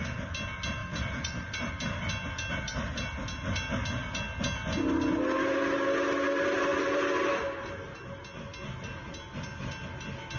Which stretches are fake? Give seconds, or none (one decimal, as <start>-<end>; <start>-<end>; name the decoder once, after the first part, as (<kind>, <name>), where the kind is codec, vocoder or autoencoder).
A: 0.8-1.7 (vocoder, BigVGAN v2); 6.7-7.3